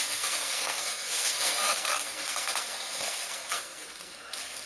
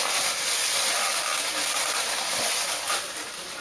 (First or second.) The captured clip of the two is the second